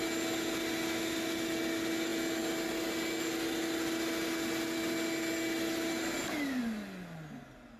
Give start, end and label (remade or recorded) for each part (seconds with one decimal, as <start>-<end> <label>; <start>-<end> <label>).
0.0-7.8 recorded